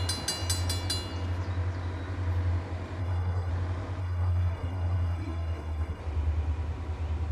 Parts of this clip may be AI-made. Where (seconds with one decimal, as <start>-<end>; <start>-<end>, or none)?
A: 3.0-3.5; 4.0-6.0